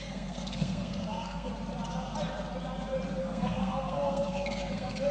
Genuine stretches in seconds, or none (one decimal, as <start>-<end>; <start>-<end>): 1.5-3.2